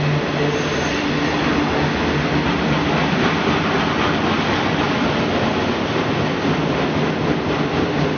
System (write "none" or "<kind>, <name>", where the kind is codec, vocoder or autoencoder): none